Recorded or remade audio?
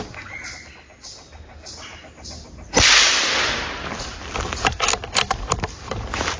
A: recorded